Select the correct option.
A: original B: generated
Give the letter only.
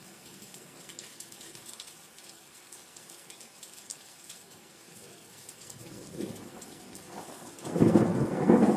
B